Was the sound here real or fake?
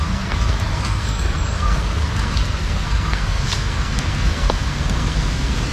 fake